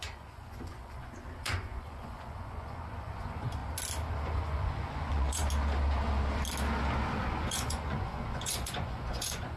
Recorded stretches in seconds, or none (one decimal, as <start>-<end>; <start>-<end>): 3.6-4.1; 5.4-7.3